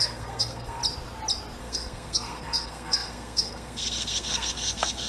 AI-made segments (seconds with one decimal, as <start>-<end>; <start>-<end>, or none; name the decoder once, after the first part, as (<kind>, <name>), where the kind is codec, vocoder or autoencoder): 0.0-0.8 (codec, SNAC); 1.6-5.1